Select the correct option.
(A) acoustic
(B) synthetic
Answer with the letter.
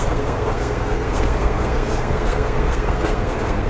B